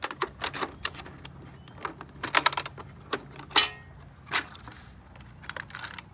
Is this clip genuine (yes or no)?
yes